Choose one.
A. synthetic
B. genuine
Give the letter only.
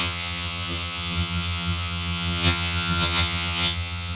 A